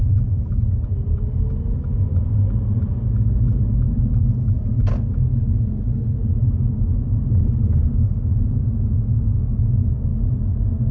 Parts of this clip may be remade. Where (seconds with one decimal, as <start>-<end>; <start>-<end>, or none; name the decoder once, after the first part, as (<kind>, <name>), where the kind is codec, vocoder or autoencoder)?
5.3-6.2 (codec, HILCodec)